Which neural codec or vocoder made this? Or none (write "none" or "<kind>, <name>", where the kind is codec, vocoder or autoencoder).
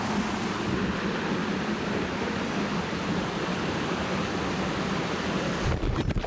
none